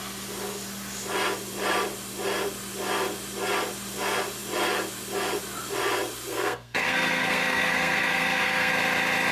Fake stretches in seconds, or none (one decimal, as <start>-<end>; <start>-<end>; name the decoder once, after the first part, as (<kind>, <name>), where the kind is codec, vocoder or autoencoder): 6.3-8.7 (codec, SNAC)